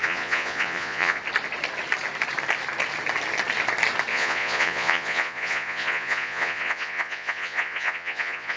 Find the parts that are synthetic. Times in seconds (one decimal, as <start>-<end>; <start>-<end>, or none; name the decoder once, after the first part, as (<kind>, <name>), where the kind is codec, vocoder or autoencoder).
0.0-1.2 (vocoder, Vocos); 4.1-8.6